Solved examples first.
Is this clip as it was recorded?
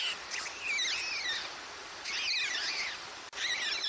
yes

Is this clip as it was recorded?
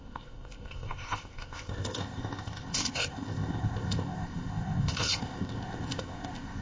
no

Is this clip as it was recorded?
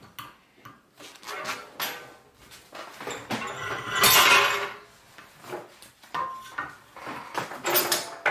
yes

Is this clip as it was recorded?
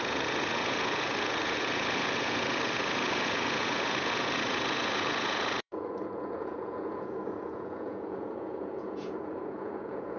no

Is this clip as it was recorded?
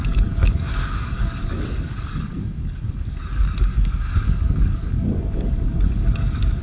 no